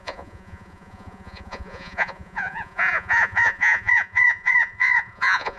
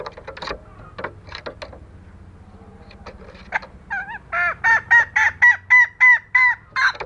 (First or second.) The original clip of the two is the second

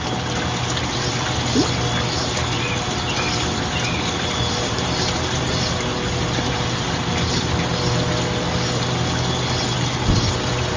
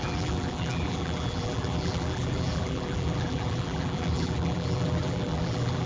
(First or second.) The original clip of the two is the first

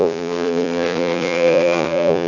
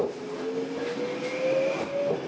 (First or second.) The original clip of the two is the second